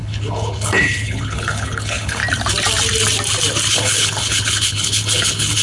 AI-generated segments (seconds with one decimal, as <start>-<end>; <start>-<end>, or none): 0.0-2.2; 3.7-5.6